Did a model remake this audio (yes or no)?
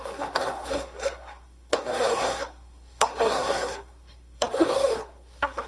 yes